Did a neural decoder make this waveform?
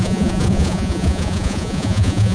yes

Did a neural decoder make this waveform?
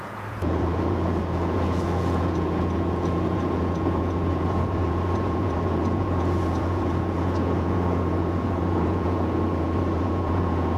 yes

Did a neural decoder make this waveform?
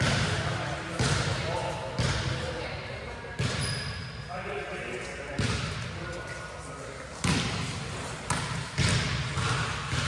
no